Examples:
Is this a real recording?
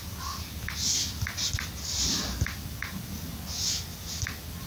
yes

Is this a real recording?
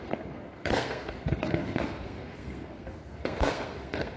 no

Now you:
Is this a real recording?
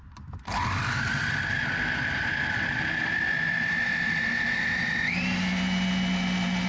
yes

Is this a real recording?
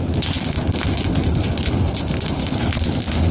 yes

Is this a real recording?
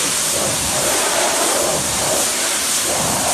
no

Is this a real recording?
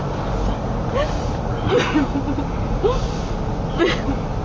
yes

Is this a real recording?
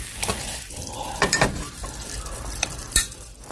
no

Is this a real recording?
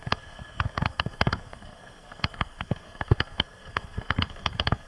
no